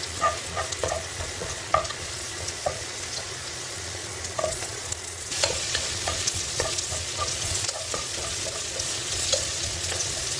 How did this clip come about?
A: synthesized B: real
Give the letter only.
A